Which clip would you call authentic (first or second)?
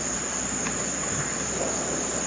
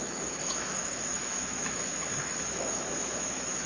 first